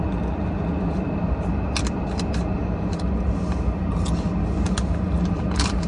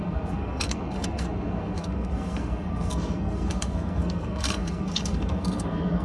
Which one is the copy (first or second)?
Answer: second